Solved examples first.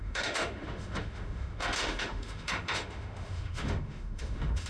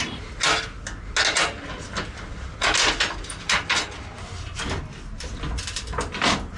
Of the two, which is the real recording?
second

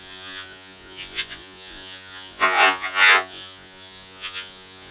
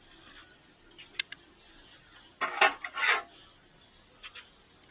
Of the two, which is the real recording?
second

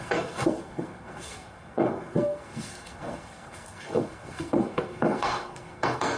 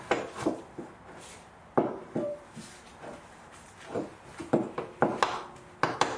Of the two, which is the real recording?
second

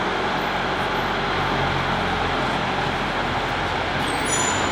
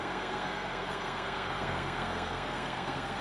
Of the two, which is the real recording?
first